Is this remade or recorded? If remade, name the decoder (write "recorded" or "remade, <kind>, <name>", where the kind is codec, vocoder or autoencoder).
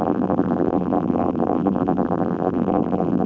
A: remade, vocoder, BigVGAN v2